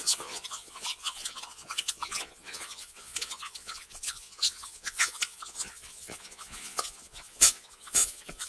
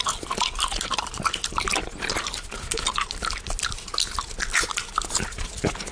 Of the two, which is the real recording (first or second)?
second